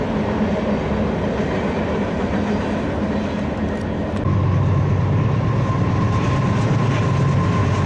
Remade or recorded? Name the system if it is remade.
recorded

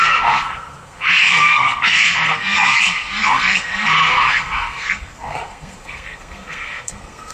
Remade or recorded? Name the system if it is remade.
remade, codec, SNAC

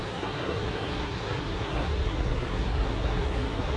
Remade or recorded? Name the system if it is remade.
remade, codec, SNAC